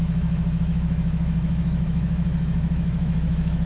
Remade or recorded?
remade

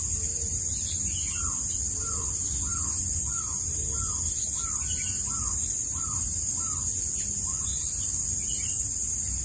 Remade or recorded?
recorded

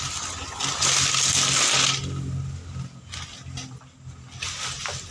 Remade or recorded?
recorded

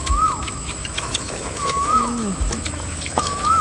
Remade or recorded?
remade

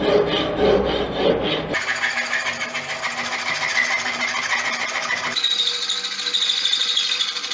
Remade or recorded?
recorded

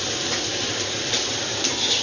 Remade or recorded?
recorded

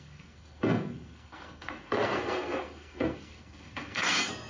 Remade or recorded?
remade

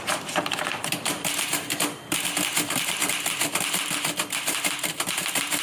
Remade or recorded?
remade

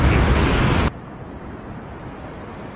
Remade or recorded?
recorded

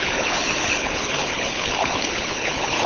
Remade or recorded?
remade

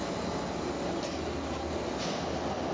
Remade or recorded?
recorded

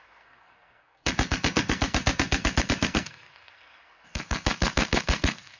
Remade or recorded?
remade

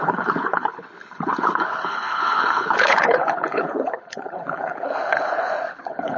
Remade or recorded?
remade